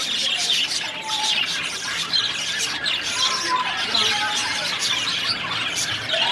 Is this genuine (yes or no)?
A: yes